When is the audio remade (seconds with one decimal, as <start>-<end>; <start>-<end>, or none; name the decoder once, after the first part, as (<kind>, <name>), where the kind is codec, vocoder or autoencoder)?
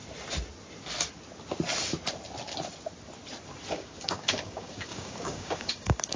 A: 3.7-6.2 (codec, DAC)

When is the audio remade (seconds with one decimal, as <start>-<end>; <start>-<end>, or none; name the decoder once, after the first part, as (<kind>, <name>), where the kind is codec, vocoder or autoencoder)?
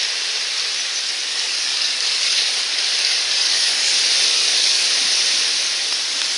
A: 1.3-2.4 (codec, DAC); 3.0-3.9; 4.3-4.9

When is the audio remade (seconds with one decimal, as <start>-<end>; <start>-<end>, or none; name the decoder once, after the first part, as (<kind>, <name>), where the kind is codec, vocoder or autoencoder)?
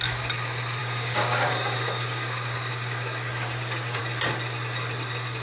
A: 0.8-4.0 (codec, DAC)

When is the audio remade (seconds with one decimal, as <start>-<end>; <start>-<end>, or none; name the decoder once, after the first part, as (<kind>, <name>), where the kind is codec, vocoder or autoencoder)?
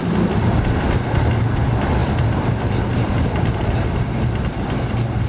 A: none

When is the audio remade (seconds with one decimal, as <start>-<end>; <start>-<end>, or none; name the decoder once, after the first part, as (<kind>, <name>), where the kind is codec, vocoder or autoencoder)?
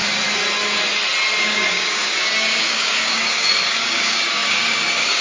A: 1.4-5.2 (codec, DAC)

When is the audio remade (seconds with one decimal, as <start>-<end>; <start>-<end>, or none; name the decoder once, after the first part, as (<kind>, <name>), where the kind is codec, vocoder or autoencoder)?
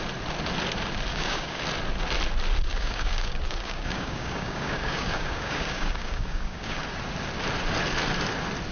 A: 1.1-1.6 (codec, DAC); 2.7-6.8